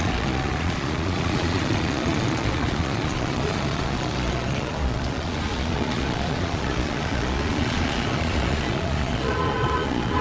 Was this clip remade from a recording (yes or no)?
yes